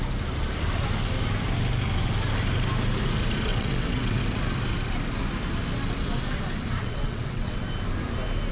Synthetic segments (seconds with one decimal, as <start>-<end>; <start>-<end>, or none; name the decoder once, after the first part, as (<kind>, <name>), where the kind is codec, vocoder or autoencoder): 3.5-4.2 (vocoder, WaveNeXt); 6.8-7.6